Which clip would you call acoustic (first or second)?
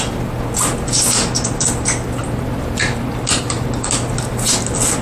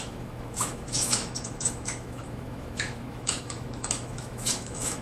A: first